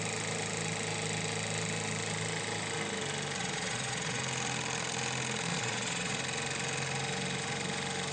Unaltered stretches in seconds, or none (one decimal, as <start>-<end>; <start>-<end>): 0.0-3.4; 4.2-5.5; 6.2-8.1